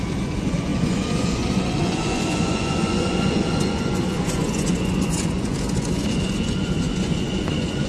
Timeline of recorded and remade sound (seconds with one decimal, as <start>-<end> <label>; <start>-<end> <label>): 0.0-7.9 remade